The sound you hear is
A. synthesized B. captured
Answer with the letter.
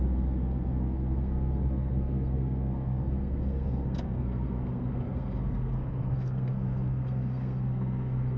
A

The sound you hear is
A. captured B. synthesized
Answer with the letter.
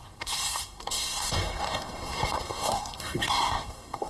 B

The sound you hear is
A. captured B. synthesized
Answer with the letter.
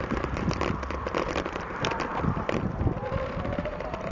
B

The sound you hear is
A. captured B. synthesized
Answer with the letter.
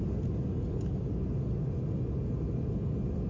A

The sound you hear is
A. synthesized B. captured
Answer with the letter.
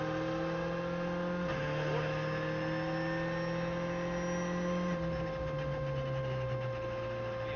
B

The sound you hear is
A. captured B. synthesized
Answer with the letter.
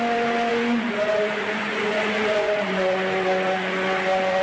B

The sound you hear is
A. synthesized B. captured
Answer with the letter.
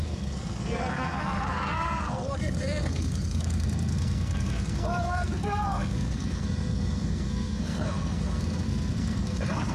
A